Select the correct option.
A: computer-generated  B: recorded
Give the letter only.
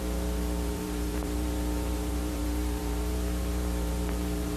A